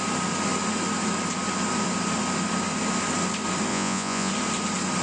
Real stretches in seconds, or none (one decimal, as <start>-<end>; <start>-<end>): 0.0-3.7; 4.3-5.0